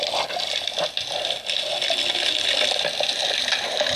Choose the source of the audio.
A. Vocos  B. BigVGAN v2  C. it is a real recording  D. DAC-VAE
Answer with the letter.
C